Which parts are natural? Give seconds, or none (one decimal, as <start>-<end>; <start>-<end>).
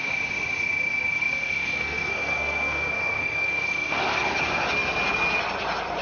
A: 0.0-1.2; 4.0-6.0